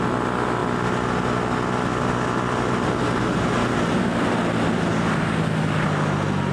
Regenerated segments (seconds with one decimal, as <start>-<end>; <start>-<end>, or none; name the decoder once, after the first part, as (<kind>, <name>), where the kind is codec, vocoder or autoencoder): none